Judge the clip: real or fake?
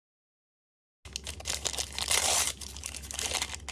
real